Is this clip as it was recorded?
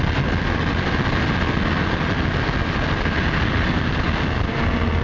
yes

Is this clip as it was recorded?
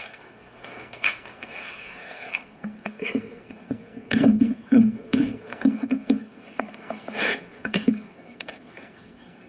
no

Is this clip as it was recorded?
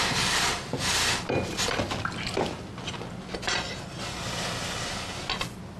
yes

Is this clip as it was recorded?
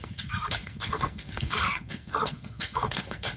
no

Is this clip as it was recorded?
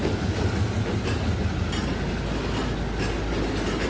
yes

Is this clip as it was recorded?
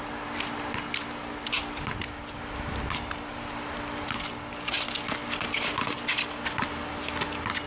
yes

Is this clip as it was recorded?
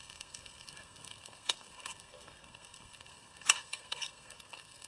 no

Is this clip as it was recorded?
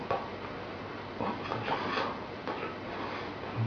yes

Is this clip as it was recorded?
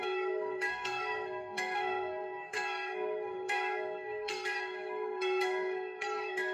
no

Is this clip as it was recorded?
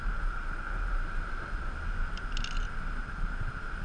yes